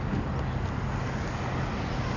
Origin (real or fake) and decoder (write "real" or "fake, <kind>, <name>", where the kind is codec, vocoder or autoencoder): real